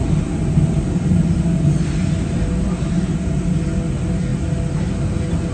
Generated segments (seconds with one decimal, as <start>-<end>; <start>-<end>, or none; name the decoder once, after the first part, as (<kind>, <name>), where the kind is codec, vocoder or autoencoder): none